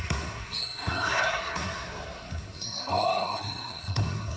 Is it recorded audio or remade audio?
remade